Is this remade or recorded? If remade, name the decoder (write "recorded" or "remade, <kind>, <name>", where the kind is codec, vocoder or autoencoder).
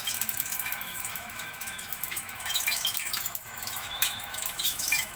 remade, autoencoder, DAC-VAE